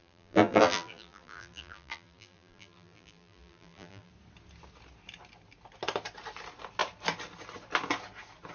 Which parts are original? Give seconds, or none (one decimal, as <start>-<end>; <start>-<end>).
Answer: 4.1-8.5